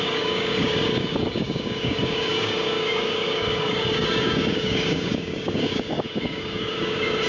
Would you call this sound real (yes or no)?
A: no